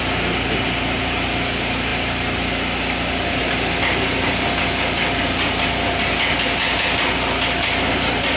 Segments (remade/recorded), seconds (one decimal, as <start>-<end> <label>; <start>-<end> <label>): 0.0-8.4 recorded